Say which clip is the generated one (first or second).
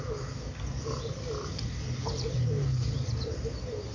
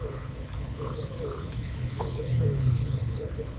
second